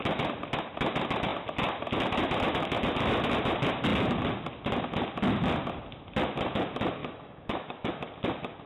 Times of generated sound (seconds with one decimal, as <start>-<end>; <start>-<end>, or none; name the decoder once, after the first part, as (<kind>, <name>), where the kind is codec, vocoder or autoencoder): 7.0-7.9 (autoencoder, DAC-VAE)